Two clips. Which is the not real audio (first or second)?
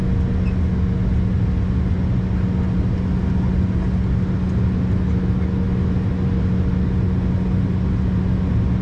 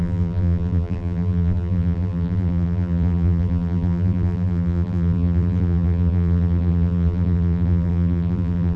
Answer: second